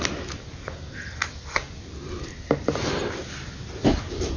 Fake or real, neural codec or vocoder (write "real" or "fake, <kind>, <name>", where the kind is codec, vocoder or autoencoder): real